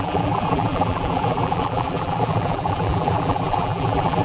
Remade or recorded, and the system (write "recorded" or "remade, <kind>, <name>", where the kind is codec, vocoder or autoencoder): remade, vocoder, BigVGAN v2